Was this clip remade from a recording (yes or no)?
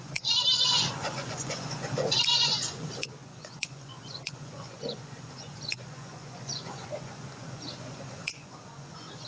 yes